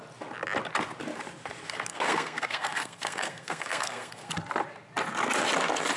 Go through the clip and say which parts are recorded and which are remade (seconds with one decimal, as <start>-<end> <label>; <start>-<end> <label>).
0.0-1.9 recorded; 1.9-4.3 remade; 4.3-6.0 recorded